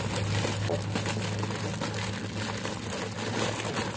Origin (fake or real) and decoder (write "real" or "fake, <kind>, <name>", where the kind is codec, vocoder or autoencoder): real